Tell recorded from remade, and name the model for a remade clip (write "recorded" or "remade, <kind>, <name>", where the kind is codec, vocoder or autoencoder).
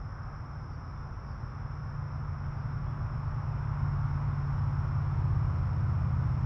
recorded